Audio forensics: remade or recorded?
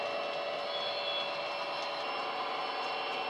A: recorded